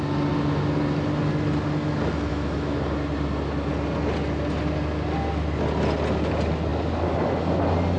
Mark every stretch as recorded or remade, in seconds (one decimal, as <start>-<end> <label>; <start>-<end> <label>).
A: 0.0-2.3 recorded; 2.3-2.8 remade; 2.8-8.0 recorded